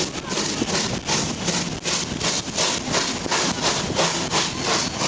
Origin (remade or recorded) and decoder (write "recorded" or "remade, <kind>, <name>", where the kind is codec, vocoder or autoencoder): recorded